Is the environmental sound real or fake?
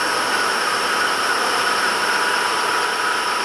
fake